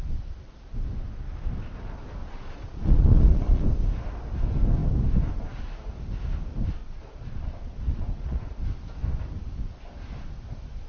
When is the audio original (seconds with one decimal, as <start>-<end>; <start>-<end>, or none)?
0.0-2.2; 3.6-6.8; 8.6-10.9